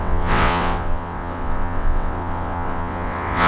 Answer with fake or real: fake